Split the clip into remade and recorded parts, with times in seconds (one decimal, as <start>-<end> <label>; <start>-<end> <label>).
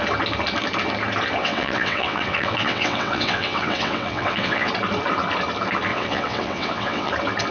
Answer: 0.0-1.4 recorded; 1.4-4.7 remade; 4.7-5.9 recorded; 5.9-7.1 remade; 7.1-7.5 recorded